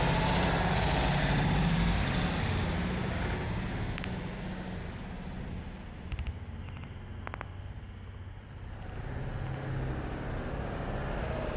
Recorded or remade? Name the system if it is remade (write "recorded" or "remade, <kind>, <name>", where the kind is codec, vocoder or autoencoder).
recorded